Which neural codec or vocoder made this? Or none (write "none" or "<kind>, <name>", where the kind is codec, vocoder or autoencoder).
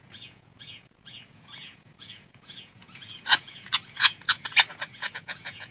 vocoder, Vocos